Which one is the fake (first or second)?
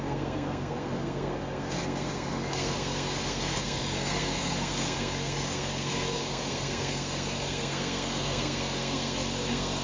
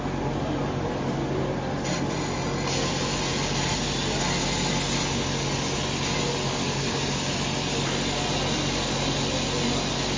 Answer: first